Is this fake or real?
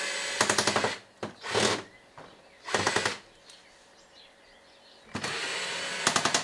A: real